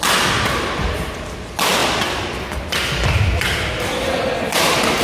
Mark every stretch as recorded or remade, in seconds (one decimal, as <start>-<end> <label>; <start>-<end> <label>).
0.0-5.0 recorded